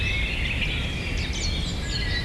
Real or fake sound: real